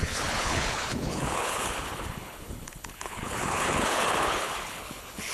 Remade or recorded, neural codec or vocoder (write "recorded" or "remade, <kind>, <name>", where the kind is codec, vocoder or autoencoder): remade, codec, HILCodec